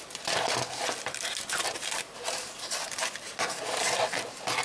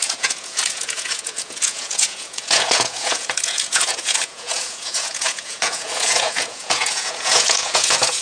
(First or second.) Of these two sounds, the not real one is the second